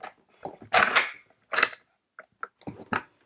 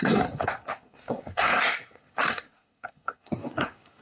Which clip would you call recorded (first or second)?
first